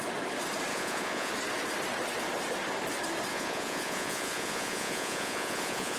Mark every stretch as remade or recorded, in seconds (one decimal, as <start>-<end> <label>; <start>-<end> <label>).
0.0-0.7 recorded; 0.7-1.3 remade; 1.3-3.3 recorded; 3.3-6.0 remade